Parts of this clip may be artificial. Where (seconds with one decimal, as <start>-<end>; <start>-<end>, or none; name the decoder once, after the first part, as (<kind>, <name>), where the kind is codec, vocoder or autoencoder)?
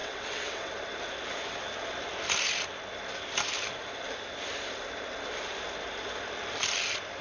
0.0-0.7 (vocoder, WaveNeXt)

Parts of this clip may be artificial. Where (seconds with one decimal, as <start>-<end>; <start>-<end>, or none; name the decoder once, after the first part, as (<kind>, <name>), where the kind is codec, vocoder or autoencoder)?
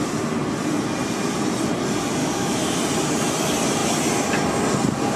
2.2-2.8 (autoencoder, DAC-VAE)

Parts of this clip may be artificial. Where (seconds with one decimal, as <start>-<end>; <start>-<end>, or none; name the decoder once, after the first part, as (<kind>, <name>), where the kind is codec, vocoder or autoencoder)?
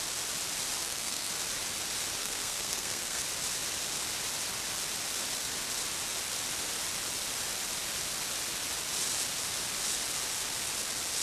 0.8-1.3 (codec, SNAC); 2.2-3.2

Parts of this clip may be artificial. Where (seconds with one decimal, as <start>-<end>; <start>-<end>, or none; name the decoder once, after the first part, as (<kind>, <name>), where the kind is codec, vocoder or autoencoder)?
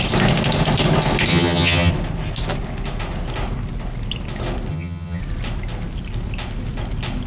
1.3-1.9 (vocoder, HiFi-GAN); 4.7-5.2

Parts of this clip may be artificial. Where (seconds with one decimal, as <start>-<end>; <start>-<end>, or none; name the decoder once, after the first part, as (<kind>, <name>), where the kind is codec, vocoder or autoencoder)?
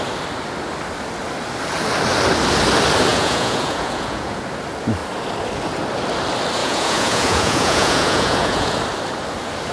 3.1-4.4 (vocoder, Vocos); 6.6-8.8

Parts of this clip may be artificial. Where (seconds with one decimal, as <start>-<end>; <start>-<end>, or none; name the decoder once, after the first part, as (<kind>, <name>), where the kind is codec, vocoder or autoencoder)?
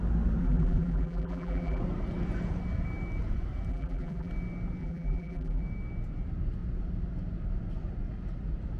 0.4-1.8 (vocoder, BigVGAN v2); 3.7-4.3; 4.8-5.6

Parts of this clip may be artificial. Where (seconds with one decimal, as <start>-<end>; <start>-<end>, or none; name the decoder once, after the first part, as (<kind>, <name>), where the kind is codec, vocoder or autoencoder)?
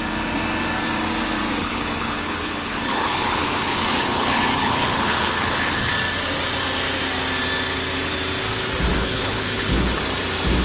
1.6-5.9 (codec, HILCodec); 8.9-10.0